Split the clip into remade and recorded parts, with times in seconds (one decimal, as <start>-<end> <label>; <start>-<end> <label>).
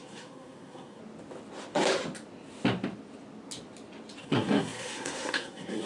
0.0-1.0 remade; 1.0-4.2 recorded; 4.2-5.9 remade